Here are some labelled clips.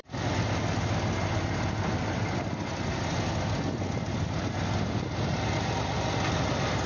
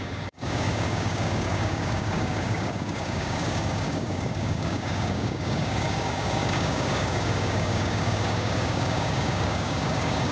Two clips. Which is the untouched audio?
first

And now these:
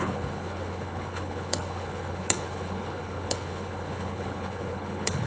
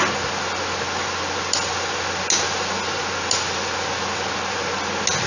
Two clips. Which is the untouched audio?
second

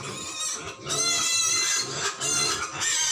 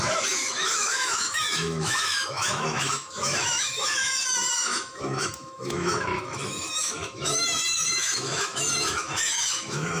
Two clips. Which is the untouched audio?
first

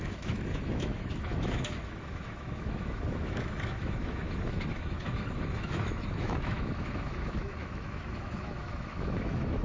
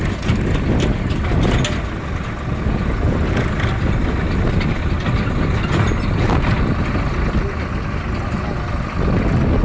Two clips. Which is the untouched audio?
second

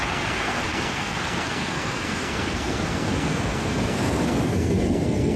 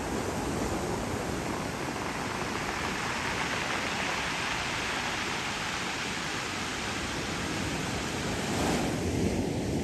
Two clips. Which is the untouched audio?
second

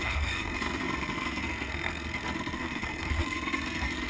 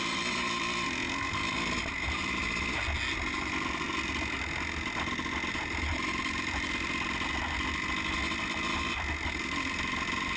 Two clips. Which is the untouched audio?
second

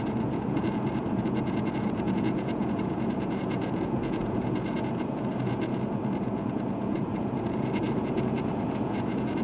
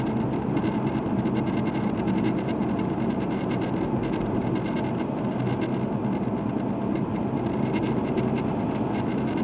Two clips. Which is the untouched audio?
second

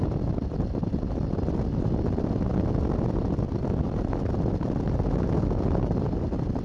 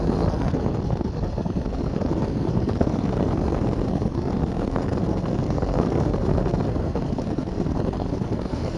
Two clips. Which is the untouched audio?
first